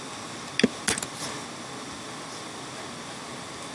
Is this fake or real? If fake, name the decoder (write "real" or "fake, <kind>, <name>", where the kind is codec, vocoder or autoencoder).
real